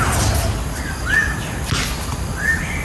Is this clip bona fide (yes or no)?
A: yes